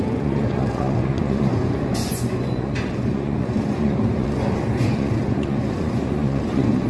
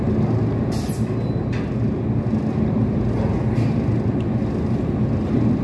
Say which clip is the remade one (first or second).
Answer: first